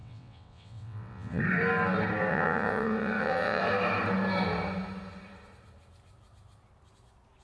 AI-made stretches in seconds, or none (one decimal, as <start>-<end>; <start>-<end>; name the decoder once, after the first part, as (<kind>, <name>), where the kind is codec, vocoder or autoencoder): 0.0-1.4 (vocoder, WaveNeXt); 2.3-3.6